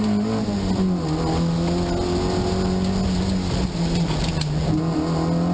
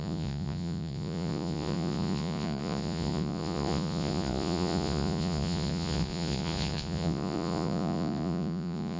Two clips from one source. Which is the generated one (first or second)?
second